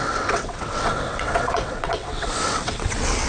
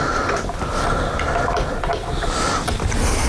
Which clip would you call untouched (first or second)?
second